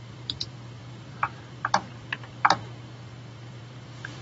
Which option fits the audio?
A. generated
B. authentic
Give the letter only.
A